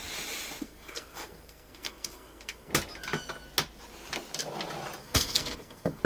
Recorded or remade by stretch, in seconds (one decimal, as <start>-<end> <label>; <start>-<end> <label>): 0.0-0.6 recorded; 0.6-2.7 remade; 2.7-5.0 recorded; 5.0-6.0 remade